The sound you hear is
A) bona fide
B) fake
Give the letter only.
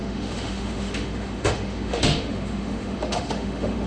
B